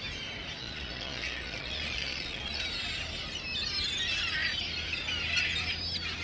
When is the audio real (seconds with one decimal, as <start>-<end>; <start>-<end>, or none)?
0.0-0.6; 2.6-6.2